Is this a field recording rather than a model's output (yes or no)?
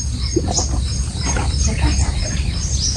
yes